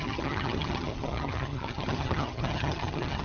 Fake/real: fake